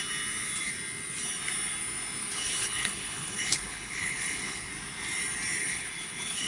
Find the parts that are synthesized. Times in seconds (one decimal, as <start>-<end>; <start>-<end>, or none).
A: 2.2-4.7; 5.6-6.5